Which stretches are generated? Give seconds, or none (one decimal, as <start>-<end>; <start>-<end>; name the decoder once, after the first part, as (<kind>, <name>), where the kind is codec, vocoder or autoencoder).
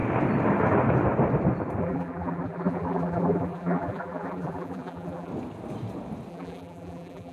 1.8-5.3 (vocoder, BigVGAN v2); 6.3-7.3